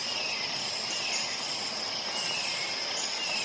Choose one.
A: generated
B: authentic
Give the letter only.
B